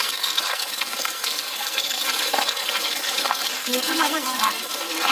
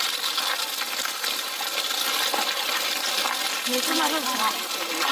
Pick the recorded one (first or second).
second